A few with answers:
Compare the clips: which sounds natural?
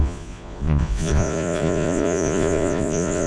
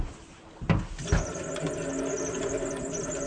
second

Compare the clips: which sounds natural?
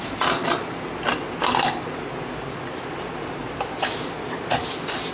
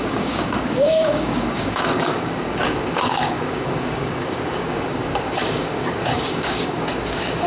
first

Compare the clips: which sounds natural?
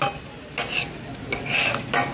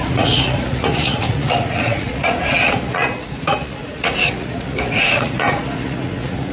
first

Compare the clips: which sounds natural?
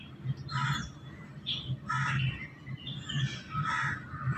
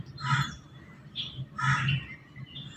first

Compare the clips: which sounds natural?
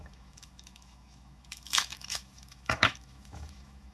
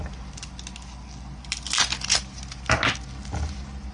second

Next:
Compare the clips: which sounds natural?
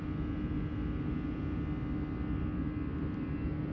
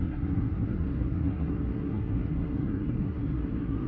first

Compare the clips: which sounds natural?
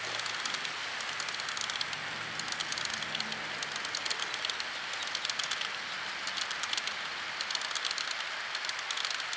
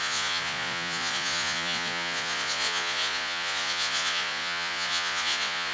first